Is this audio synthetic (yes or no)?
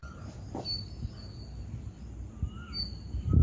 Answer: no